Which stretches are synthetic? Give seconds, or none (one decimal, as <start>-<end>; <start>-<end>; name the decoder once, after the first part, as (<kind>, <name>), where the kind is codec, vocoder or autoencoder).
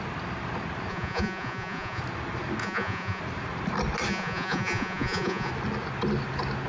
0.9-2.0 (vocoder, Vocos); 2.6-3.2; 4.1-5.5